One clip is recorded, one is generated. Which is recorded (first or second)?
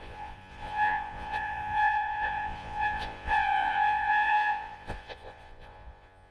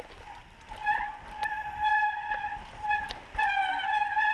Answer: second